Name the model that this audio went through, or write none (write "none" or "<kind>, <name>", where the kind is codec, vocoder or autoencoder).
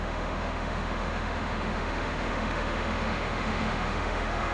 autoencoder, DAC-VAE